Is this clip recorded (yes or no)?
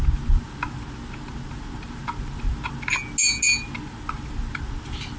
yes